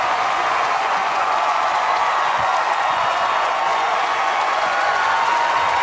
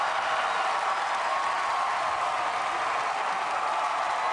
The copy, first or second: first